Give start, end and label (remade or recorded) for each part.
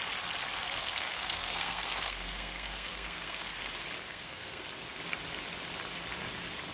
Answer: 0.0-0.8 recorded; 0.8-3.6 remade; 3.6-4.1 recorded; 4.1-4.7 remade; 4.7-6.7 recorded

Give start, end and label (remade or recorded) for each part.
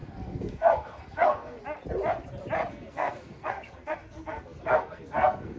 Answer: 0.0-1.6 remade; 1.6-2.7 recorded; 2.7-5.6 remade